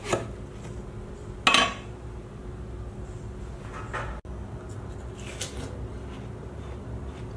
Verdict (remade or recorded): recorded